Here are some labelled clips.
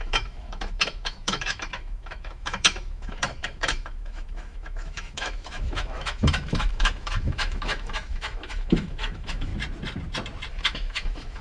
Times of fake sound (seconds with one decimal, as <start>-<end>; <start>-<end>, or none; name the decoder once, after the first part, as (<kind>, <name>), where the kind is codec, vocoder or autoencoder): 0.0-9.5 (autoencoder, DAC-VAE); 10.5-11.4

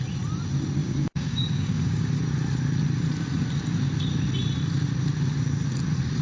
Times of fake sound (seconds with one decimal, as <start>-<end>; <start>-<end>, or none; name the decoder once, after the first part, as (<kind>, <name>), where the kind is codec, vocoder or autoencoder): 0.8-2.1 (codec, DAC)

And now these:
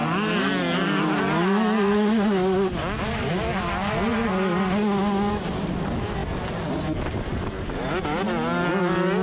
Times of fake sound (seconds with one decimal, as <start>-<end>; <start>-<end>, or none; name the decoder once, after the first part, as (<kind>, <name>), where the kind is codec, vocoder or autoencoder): none

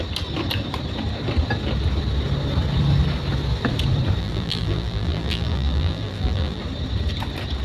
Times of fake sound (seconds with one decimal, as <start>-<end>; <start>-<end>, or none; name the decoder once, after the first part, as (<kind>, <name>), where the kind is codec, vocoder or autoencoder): 4.2-6.6 (vocoder, BigVGAN v2)